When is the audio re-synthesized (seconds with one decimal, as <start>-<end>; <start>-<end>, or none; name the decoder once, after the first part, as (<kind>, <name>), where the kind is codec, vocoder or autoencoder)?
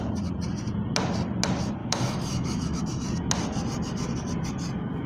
1.8-2.8 (autoencoder, DAC-VAE)